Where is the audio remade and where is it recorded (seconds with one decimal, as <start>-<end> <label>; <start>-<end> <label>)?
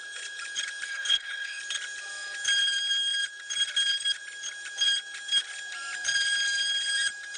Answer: 0.0-0.9 recorded; 0.9-1.6 remade; 1.6-7.4 recorded